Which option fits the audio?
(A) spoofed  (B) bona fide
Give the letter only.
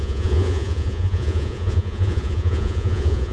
A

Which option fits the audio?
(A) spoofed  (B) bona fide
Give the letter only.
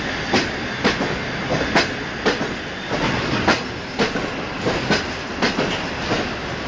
B